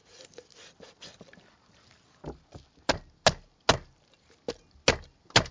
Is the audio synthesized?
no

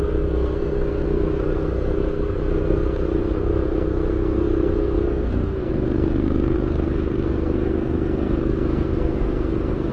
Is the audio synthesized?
yes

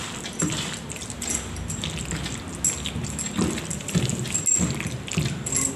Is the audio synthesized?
no